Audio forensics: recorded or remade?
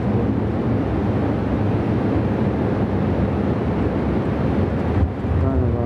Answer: recorded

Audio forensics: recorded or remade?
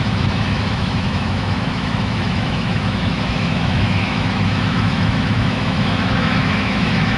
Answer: remade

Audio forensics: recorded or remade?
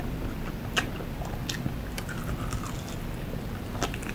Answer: recorded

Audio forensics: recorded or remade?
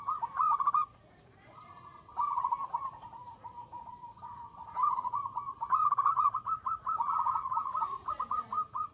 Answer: remade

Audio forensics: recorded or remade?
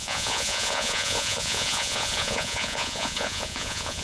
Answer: remade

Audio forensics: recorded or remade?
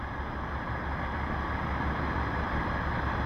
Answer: recorded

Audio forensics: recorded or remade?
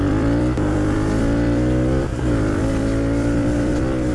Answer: remade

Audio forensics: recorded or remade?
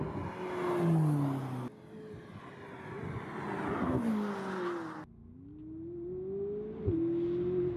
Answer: recorded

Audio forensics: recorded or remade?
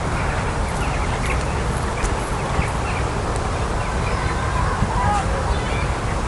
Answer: recorded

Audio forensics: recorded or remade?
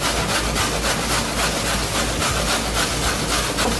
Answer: recorded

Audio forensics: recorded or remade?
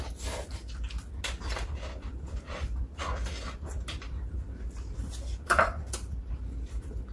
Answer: recorded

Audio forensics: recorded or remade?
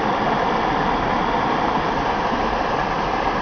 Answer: recorded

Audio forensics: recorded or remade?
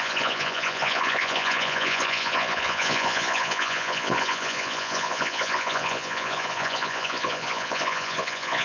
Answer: remade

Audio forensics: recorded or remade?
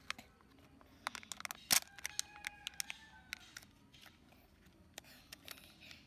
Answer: recorded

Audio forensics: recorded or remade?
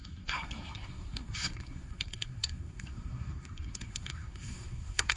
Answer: remade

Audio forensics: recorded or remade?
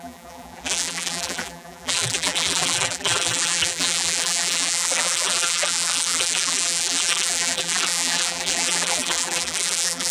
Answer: remade